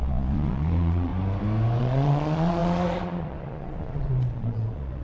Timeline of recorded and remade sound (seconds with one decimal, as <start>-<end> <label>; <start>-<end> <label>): 0.0-1.1 remade; 1.1-1.8 recorded; 1.8-5.0 remade